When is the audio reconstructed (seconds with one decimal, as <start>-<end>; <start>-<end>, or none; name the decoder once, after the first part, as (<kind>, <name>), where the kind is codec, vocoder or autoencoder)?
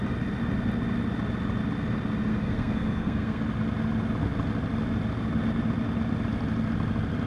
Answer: 2.3-3.4 (codec, SNAC)